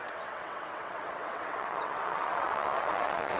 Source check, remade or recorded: remade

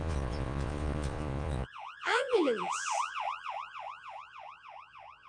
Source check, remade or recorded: remade